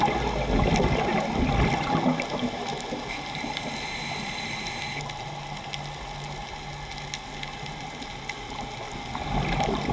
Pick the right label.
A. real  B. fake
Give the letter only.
A